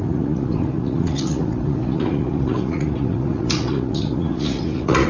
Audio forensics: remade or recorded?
remade